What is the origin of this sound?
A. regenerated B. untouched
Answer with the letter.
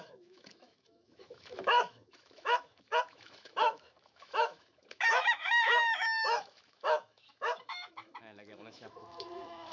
A